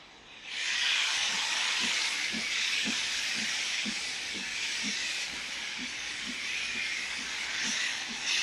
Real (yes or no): no